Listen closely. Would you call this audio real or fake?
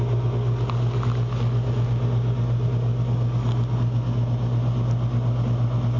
real